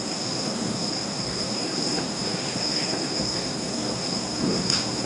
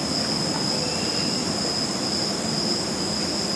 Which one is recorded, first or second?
second